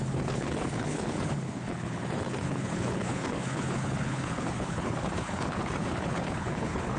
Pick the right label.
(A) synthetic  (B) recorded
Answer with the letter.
A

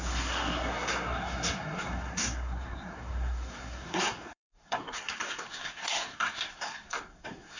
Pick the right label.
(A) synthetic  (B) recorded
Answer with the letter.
A